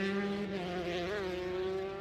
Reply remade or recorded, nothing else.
recorded